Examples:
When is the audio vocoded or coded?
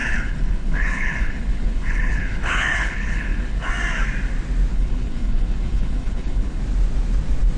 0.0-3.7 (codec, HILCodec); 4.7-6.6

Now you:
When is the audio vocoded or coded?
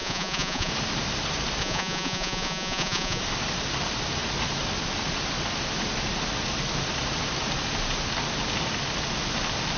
0.0-0.7 (vocoder, Vocos); 1.6-3.2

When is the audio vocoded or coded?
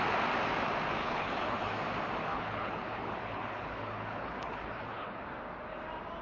1.0-1.8 (codec, HILCodec); 2.3-5.2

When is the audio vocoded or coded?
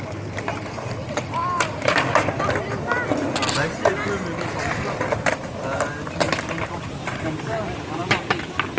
none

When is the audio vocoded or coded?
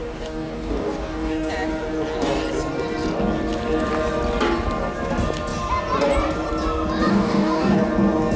0.0-1.5 (codec, DAC); 7.1-7.8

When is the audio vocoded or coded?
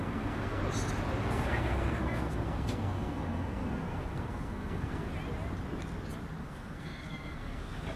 0.0-0.6 (codec, SNAC); 1.2-5.1; 6.4-8.0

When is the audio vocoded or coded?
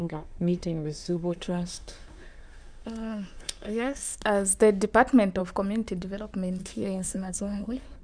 0.0-4.2 (codec, SNAC); 6.6-8.0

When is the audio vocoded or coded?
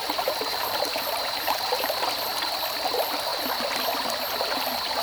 0.0-1.9 (vocoder, BigVGAN v2)